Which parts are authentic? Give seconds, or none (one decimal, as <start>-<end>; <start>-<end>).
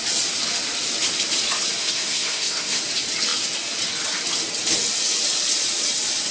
0.0-1.8; 2.8-6.3